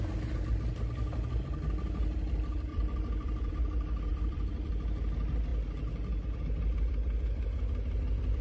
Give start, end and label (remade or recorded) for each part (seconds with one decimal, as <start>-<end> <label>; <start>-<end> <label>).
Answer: 0.0-2.7 recorded; 2.7-3.5 remade; 3.5-4.1 recorded; 4.1-4.7 remade; 4.7-8.4 recorded